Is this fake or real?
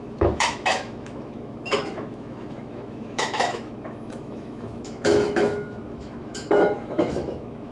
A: fake